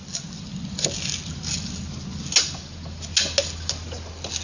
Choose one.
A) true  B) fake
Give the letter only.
A